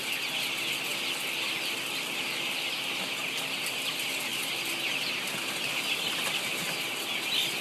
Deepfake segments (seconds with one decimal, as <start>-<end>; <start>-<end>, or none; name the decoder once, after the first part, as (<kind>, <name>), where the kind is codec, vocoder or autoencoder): 0.9-3.9 (vocoder, BigVGAN v2); 4.3-6.9